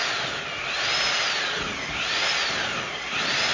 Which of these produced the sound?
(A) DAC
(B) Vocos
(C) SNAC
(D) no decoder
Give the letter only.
D